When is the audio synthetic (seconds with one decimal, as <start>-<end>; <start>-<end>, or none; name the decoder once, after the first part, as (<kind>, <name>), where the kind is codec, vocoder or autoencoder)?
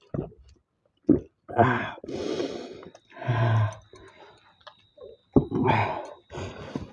none